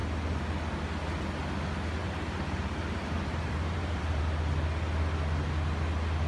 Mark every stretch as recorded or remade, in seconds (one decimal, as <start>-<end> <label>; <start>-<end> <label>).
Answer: 0.0-2.0 recorded; 2.0-4.2 remade; 4.2-6.3 recorded